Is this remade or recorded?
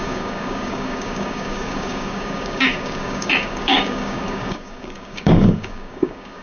remade